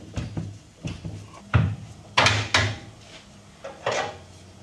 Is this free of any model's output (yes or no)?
yes